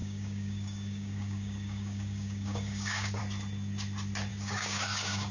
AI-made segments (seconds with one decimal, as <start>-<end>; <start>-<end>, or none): 0.0-3.2; 4.3-5.3